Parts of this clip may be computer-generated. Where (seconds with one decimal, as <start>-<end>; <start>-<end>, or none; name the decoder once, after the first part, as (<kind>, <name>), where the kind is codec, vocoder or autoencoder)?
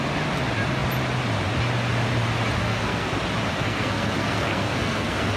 2.6-3.1 (codec, SNAC); 3.5-5.4